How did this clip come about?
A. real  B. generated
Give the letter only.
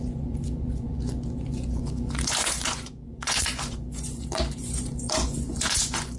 B